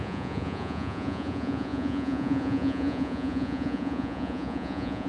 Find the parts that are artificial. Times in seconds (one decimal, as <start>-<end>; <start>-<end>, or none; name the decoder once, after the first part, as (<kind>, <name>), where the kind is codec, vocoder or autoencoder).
0.0-5.1 (vocoder, Vocos)